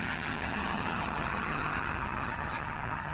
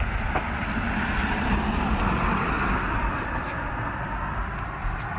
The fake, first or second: first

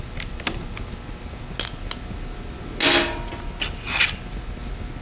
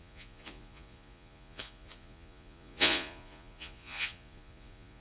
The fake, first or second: second